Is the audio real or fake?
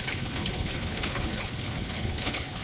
fake